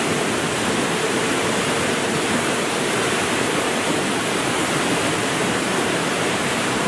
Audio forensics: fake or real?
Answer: fake